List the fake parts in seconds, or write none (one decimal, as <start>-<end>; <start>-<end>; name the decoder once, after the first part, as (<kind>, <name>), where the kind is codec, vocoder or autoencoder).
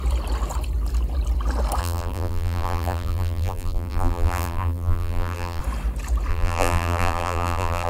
1.8-5.6 (vocoder, BigVGAN v2); 6.3-7.9